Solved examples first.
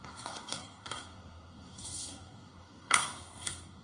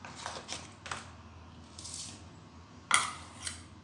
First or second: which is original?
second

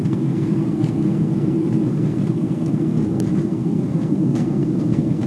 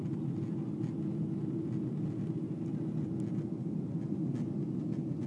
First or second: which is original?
second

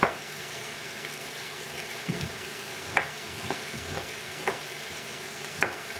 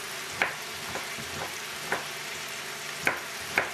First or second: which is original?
second